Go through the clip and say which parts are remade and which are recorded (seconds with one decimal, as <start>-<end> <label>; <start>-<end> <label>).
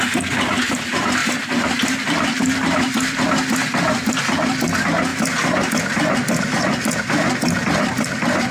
0.0-1.2 recorded; 1.2-4.2 remade; 4.2-5.1 recorded; 5.1-5.7 remade; 5.7-8.5 recorded